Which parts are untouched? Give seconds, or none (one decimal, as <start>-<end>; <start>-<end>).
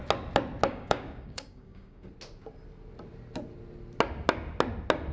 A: 0.0-0.7; 2.1-5.1